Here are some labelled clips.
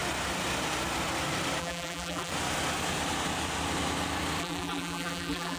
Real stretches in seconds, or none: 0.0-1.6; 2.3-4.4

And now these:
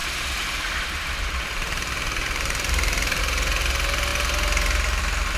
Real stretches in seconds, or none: 3.2-5.4

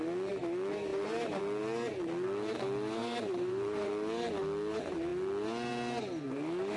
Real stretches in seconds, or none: 0.0-0.9; 1.4-3.0; 3.9-6.8

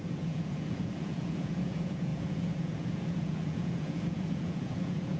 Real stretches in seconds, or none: none

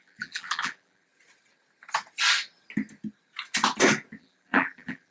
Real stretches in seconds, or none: 1.1-4.2